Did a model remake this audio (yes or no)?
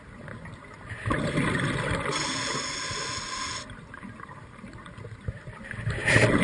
no